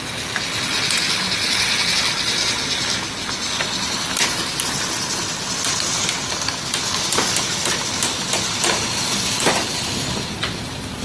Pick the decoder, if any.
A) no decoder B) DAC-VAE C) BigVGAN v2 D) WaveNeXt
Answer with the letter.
A